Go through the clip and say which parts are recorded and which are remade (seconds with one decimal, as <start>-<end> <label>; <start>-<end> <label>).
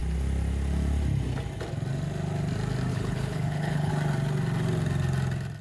0.0-2.9 recorded; 2.9-3.9 remade; 3.9-5.6 recorded